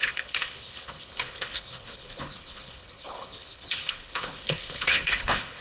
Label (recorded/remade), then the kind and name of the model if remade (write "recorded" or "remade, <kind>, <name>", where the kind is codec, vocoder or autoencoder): remade, codec, HILCodec